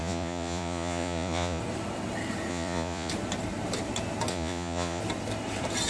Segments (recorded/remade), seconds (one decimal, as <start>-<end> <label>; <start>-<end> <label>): 0.0-1.6 remade; 1.6-2.5 recorded; 2.5-3.1 remade; 3.1-4.3 recorded; 4.3-5.0 remade; 5.0-5.9 recorded